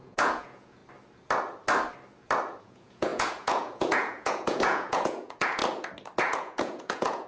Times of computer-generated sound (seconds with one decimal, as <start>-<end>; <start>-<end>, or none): 0.0-0.8; 2.6-5.6; 6.2-7.3